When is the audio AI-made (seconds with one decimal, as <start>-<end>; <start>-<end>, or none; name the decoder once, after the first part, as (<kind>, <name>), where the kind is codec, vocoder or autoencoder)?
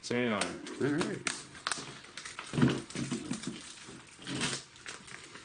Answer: 0.0-0.7 (codec, SNAC)